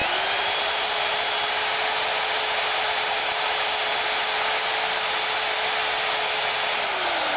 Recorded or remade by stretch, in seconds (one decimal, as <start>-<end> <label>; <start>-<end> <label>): 0.0-1.3 remade; 1.3-7.4 recorded